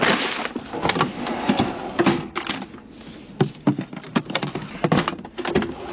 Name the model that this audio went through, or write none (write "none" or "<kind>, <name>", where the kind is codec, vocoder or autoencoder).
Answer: none